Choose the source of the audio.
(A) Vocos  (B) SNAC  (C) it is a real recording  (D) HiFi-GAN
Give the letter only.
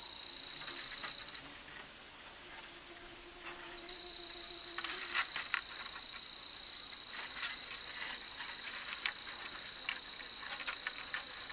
C